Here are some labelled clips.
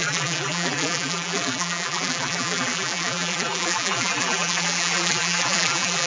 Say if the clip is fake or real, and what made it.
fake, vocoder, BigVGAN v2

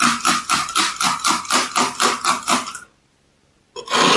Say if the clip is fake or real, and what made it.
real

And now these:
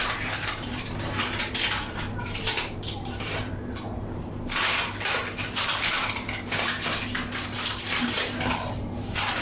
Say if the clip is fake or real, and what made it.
fake, vocoder, BigVGAN v2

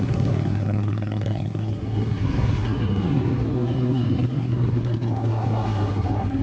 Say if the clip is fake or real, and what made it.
fake, codec, SNAC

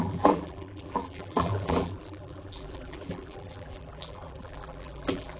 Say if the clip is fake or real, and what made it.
fake, vocoder, BigVGAN v2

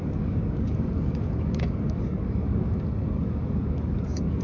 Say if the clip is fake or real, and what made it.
fake, codec, DAC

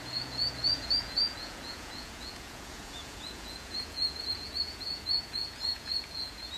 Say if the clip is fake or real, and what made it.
fake, vocoder, Vocos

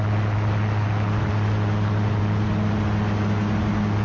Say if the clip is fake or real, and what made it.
real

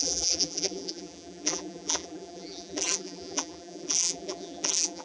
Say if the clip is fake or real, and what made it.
fake, vocoder, BigVGAN v2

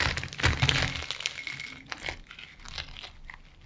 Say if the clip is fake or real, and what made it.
real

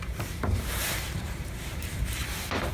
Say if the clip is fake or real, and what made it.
fake, vocoder, BigVGAN v2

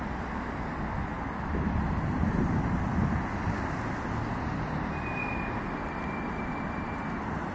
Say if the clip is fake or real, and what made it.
real